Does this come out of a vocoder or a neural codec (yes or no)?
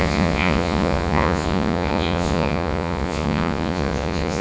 yes